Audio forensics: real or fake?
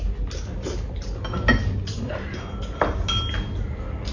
real